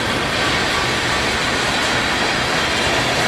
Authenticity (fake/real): real